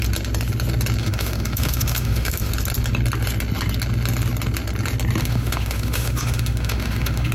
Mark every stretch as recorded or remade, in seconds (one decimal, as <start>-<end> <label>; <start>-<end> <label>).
0.0-1.0 recorded; 1.0-2.5 remade; 2.5-5.2 recorded; 5.2-7.3 remade